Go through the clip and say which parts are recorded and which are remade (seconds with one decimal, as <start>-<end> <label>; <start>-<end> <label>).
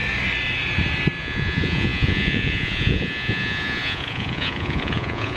0.0-1.2 recorded; 1.2-5.4 remade